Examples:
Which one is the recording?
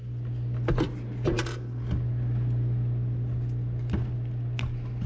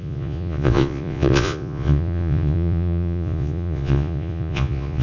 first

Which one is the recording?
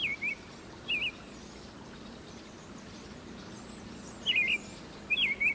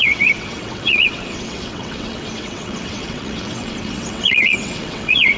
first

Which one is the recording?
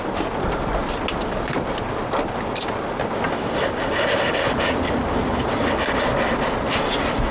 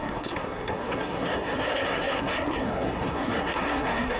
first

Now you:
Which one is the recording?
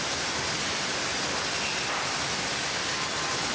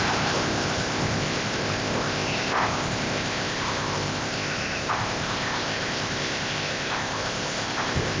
first